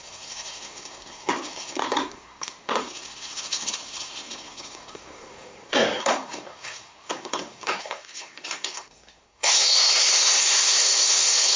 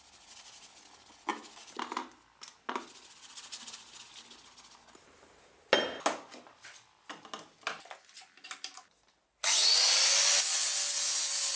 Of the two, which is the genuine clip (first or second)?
second